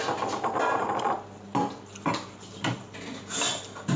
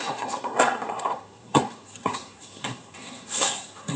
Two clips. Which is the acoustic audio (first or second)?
first